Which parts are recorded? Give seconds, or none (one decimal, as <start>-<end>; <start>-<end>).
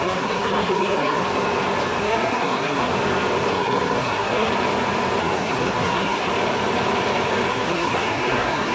1.2-2.0; 2.9-3.5; 4.5-5.2; 6.3-7.5